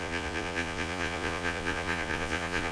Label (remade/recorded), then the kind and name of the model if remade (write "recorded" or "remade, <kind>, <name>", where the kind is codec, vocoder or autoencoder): remade, vocoder, Vocos